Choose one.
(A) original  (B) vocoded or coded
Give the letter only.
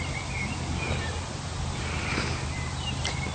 A